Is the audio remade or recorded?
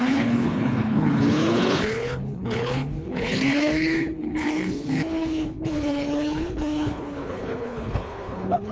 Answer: remade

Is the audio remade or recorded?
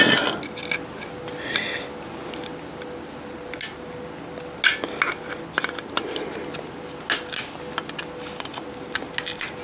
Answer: recorded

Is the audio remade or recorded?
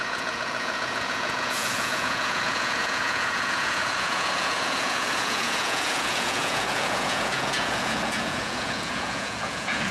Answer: remade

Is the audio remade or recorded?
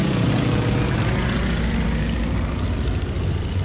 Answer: recorded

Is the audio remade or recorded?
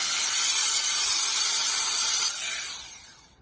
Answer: recorded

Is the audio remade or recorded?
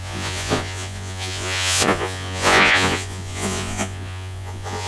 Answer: remade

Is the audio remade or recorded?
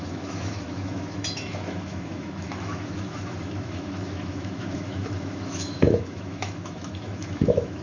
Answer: remade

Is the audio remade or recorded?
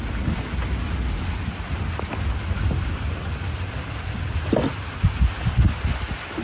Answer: recorded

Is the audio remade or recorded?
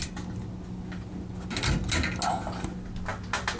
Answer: recorded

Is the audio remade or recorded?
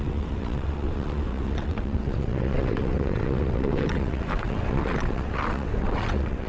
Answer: remade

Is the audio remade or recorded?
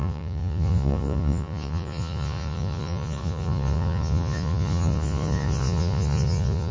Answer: remade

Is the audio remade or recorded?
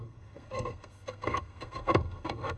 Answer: remade